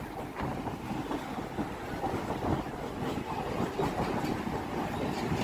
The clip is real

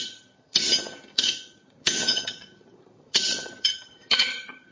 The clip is fake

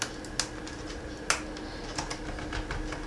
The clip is real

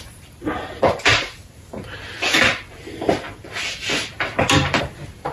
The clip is fake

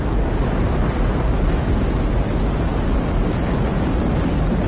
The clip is real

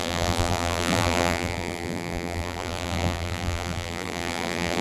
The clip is fake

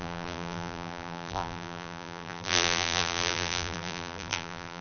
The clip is fake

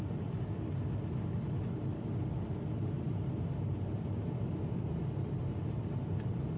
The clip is real